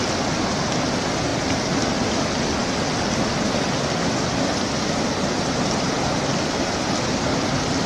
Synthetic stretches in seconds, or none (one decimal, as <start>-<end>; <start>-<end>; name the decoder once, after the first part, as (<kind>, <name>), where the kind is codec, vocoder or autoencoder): none